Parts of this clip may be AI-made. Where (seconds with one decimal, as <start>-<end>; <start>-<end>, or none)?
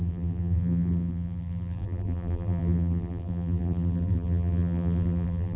0.0-5.6